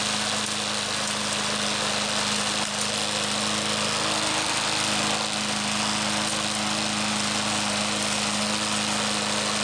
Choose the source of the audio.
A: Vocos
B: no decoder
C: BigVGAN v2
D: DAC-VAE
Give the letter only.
B